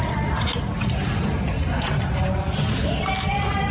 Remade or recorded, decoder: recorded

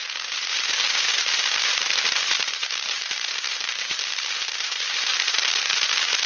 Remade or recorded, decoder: remade, vocoder, BigVGAN v2